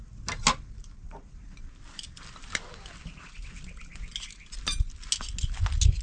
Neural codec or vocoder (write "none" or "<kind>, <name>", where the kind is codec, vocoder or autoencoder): none